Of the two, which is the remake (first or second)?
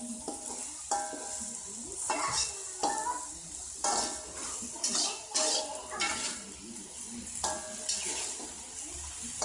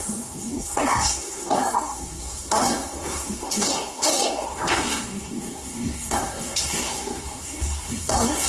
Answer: second